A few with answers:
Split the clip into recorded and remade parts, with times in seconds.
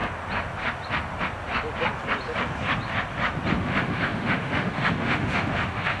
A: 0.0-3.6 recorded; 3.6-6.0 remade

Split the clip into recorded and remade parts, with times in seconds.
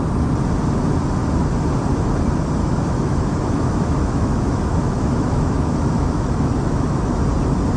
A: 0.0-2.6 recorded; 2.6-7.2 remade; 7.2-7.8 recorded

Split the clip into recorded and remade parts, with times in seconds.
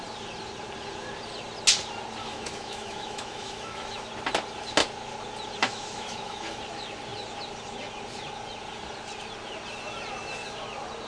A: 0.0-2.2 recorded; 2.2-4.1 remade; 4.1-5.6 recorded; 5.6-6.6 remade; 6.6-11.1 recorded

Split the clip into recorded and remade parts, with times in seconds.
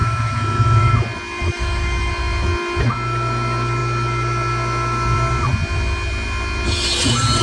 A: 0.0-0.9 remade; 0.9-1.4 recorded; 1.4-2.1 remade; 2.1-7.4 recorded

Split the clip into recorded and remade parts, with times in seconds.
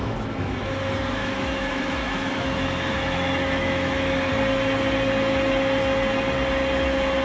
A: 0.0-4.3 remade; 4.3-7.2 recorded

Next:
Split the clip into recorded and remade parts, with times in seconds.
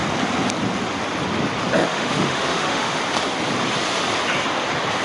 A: 0.0-1.9 recorded; 1.9-3.0 remade; 3.0-5.0 recorded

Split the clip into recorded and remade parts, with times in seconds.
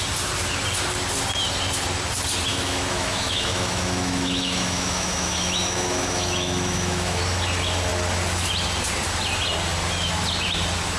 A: 0.0-2.5 recorded; 2.5-7.2 remade; 7.2-11.0 recorded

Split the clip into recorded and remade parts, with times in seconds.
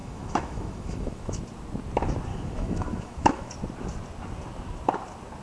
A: 0.0-1.4 remade; 1.4-2.3 recorded; 2.3-3.5 remade; 3.5-5.4 recorded